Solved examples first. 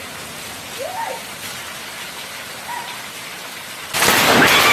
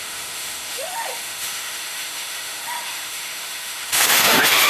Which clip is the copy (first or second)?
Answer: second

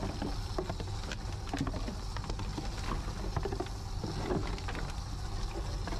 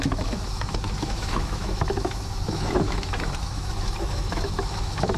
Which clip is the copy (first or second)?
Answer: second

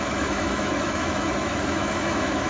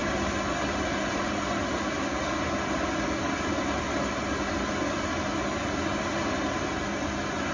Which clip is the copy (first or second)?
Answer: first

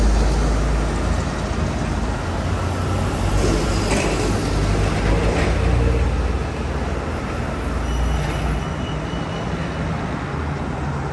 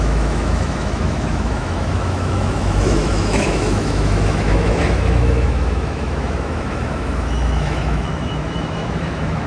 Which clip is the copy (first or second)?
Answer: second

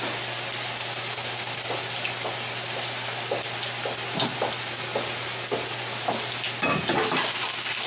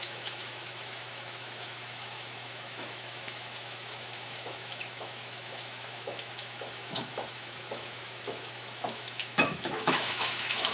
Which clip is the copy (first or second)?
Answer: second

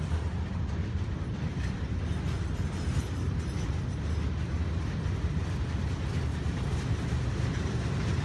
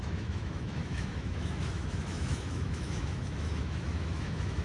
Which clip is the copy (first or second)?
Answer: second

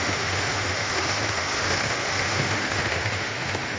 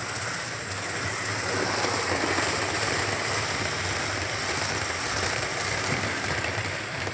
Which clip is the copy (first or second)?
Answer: first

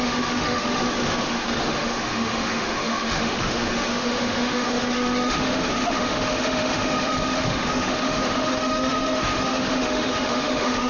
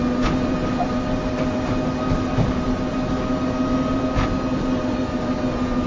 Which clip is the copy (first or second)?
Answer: first